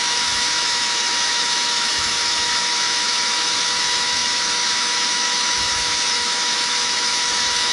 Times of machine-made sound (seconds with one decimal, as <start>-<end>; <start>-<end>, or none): 0.0-7.7